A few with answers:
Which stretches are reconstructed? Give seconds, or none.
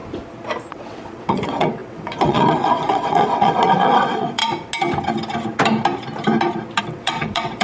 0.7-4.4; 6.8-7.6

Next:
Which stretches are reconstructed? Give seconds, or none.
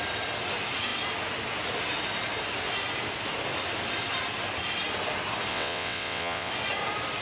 5.5-6.5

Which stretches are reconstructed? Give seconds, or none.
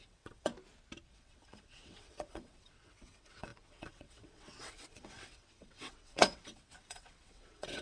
0.0-0.5; 1.1-7.8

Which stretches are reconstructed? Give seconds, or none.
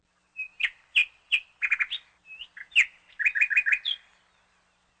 none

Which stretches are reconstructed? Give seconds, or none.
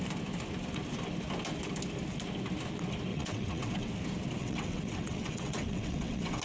3.1-3.9; 4.4-6.4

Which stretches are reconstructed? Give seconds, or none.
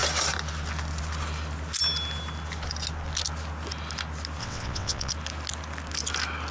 4.4-5.1